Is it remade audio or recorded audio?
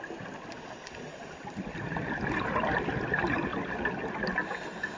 recorded